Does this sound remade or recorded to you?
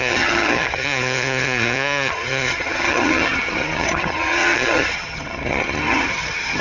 remade